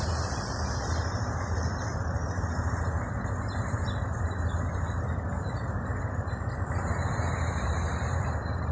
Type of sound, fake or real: fake